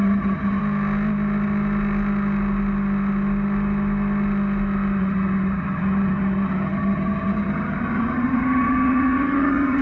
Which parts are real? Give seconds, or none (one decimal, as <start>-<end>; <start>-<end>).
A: 0.6-5.0